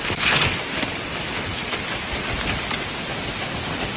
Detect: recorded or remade recorded